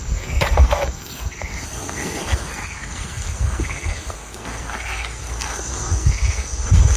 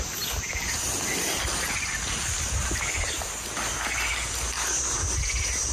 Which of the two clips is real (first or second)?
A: second